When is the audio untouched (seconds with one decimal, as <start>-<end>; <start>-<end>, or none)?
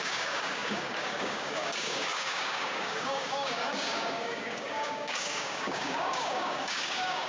none